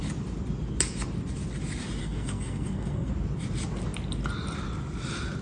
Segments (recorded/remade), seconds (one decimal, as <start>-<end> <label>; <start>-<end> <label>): 0.0-2.0 recorded; 2.0-3.1 remade; 3.1-5.4 recorded